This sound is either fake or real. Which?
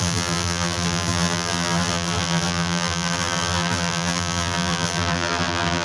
fake